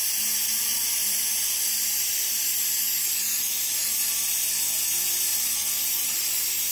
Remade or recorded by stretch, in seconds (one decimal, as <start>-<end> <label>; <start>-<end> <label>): 0.0-6.7 recorded